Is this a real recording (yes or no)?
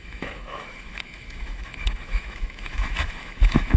no